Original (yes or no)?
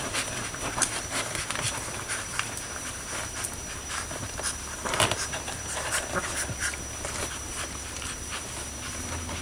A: no